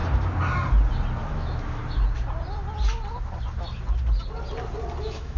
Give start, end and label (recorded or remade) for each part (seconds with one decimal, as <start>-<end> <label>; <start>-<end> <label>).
0.0-1.2 recorded; 1.2-1.8 remade; 1.8-5.0 recorded; 5.0-5.4 remade